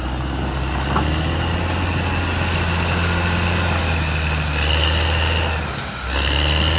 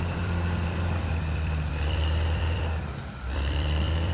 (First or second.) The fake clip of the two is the second